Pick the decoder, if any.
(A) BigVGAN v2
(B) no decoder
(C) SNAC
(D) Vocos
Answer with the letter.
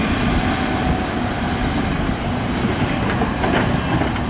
B